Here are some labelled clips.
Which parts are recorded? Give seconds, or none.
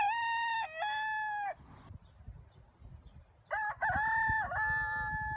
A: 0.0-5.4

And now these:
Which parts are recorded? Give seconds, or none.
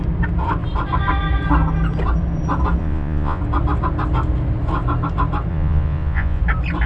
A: 0.0-2.8; 3.4-5.5; 6.4-6.9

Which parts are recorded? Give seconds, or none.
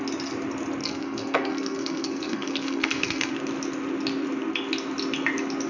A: 0.0-0.8; 3.3-5.7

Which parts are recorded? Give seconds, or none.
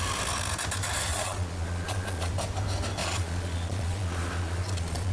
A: 0.0-1.1; 2.3-3.0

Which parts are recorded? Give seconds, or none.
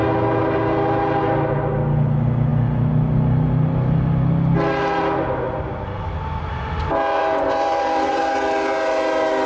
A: 0.0-7.2; 8.2-9.5